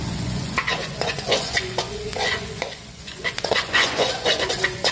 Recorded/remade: remade